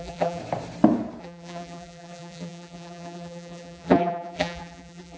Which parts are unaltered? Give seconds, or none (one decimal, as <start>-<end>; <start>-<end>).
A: 0.4-1.2